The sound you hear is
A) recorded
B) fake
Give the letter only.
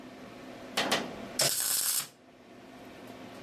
A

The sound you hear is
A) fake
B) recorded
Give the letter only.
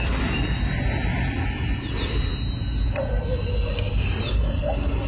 B